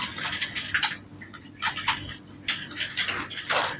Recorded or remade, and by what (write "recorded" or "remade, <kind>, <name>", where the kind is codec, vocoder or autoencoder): recorded